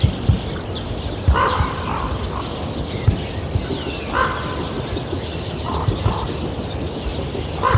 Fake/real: real